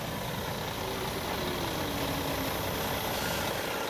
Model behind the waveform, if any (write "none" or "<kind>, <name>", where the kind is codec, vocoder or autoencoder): none